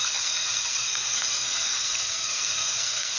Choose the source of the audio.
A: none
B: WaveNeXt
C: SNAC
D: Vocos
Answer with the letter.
C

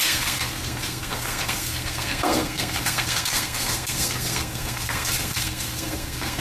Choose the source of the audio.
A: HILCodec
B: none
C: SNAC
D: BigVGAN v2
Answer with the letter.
C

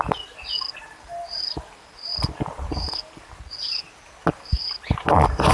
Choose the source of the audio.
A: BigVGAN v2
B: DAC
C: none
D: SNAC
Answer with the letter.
C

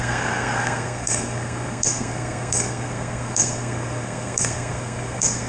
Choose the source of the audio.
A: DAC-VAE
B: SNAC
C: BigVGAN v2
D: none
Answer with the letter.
B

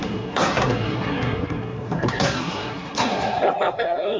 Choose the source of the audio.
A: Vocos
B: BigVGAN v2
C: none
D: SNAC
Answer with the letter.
D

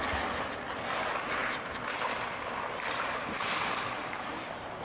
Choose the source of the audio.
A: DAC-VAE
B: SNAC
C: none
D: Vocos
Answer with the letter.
C